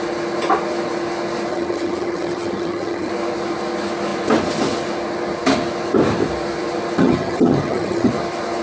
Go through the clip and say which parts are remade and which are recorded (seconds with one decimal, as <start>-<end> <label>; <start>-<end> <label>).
0.0-1.5 recorded; 1.5-3.1 remade; 3.1-7.0 recorded; 7.0-8.1 remade; 8.1-8.6 recorded